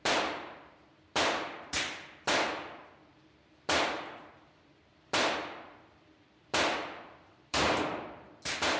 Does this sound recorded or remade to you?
remade